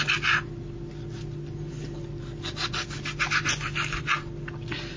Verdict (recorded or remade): recorded